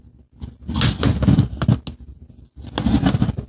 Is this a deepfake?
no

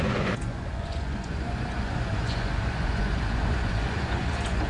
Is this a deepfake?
yes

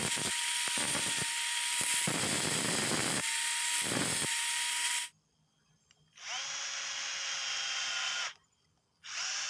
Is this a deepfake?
yes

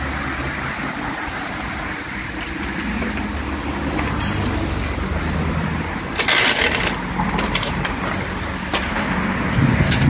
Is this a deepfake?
no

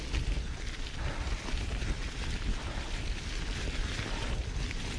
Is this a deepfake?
no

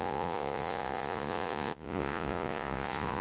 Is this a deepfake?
yes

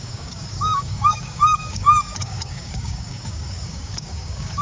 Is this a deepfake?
yes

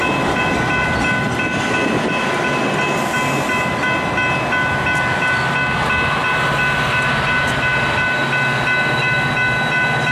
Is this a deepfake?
no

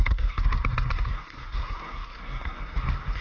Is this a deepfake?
yes